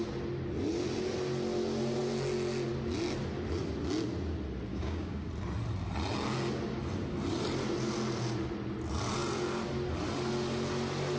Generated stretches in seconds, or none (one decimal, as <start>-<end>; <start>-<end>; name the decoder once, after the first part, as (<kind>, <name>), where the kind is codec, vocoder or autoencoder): 4.7-5.3 (codec, DAC)